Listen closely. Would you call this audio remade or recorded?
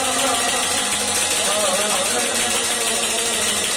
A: recorded